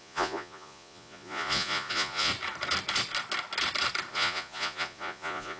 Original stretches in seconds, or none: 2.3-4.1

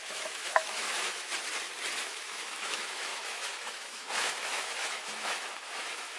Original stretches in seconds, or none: 1.3-2.0

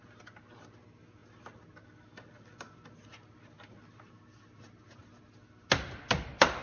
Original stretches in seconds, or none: 0.0-6.6

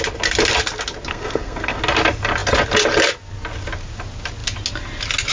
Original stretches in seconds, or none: 0.0-1.1; 1.8-5.3